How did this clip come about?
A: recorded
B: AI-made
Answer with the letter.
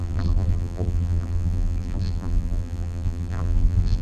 B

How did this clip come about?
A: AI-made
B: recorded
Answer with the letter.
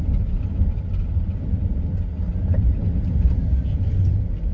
B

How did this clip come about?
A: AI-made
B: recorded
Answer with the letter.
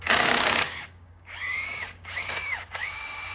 A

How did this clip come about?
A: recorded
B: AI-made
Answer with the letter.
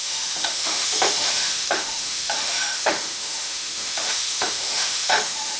B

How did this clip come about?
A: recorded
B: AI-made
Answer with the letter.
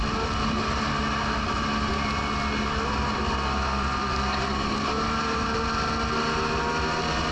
A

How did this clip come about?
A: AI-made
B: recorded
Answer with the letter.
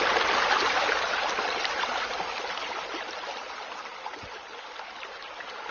B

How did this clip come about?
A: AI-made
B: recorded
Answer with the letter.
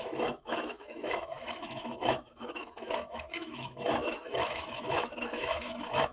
A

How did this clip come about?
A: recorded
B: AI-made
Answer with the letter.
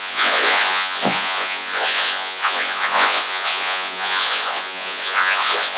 B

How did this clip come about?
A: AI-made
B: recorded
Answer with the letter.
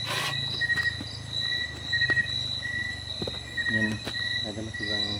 B